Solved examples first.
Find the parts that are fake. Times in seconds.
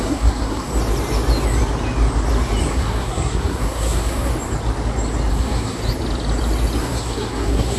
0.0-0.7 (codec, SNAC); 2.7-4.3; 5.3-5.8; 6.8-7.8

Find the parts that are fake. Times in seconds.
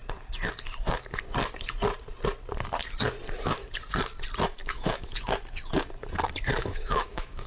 4.6-5.2 (autoencoder, DAC-VAE); 6.6-7.5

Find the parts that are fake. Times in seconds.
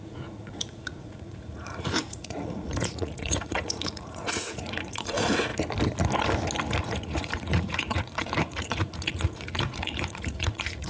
0.0-5.5 (vocoder, Vocos); 6.9-10.9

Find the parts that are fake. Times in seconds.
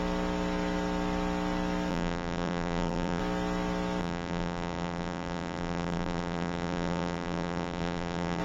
1.9-3.2 (vocoder, BigVGAN v2); 4.0-8.4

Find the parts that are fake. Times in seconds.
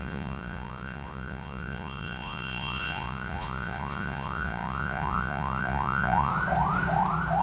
0.0-6.3 (vocoder, Vocos)